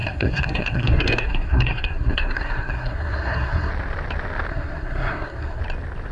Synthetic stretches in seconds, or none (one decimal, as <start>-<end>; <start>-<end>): 0.0-3.7; 4.5-5.6